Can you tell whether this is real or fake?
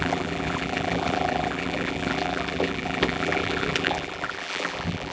fake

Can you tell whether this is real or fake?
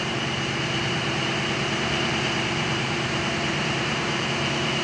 fake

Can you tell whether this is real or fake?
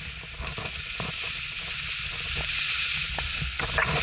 real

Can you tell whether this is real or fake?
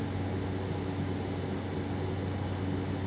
real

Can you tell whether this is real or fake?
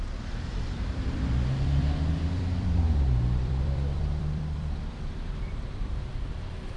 fake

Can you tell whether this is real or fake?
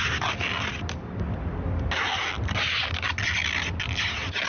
real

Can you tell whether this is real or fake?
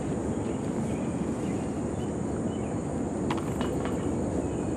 real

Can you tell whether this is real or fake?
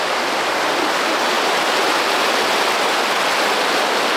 real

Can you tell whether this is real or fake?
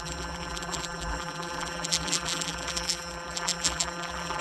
fake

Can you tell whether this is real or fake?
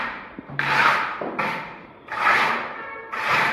fake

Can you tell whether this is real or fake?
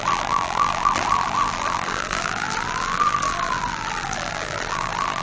fake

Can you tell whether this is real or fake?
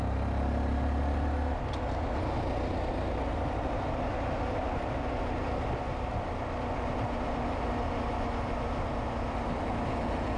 real